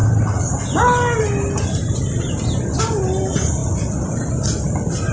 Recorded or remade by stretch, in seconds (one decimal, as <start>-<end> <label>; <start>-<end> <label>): 0.0-5.1 recorded

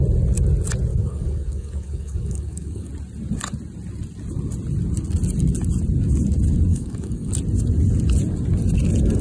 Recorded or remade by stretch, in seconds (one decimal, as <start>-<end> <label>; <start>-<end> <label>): 0.0-0.9 recorded; 0.9-2.9 remade; 2.9-6.7 recorded; 6.7-7.3 remade; 7.3-9.2 recorded

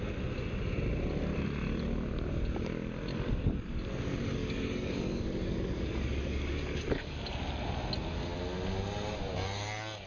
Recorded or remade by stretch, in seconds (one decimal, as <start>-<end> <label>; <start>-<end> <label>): 0.0-3.1 recorded; 3.1-3.8 remade; 3.8-4.4 recorded; 4.4-7.2 remade; 7.2-10.1 recorded

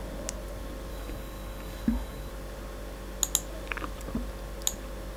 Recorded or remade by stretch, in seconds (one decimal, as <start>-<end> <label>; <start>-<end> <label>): 0.0-0.9 recorded; 0.9-2.3 remade; 2.3-5.2 recorded

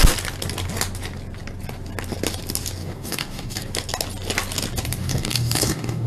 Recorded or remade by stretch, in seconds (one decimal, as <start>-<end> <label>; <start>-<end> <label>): 0.0-2.8 recorded; 2.8-3.7 remade; 3.7-5.0 recorded; 5.0-6.1 remade

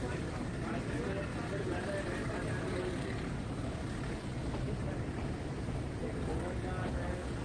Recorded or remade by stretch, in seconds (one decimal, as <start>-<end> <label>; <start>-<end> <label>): 0.0-6.8 recorded; 6.8-7.4 remade

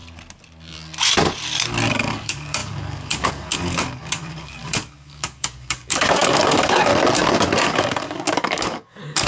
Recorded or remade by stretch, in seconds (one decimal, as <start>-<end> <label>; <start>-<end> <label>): 0.0-1.9 recorded; 1.9-6.9 remade; 6.9-7.6 recorded; 7.6-9.3 remade